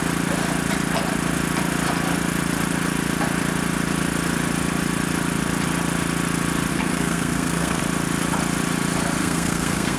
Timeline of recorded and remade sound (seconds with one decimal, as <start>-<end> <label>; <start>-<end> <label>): 0.0-6.7 recorded; 6.7-7.8 remade; 7.8-9.2 recorded; 9.2-10.0 remade